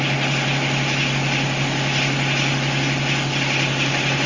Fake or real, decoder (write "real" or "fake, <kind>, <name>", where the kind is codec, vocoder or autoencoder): real